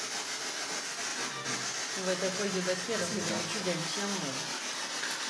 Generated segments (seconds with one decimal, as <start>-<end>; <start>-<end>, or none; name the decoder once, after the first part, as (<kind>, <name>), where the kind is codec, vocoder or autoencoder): none